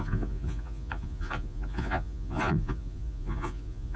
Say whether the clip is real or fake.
fake